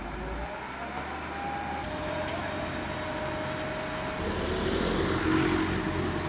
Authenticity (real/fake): real